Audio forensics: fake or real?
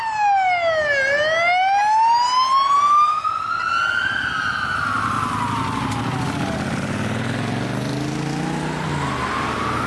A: real